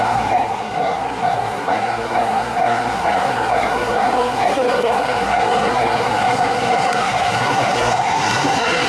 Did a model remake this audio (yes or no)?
yes